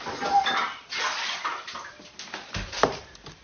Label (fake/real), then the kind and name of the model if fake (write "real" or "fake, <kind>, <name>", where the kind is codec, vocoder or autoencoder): real